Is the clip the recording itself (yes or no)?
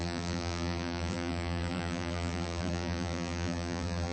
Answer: no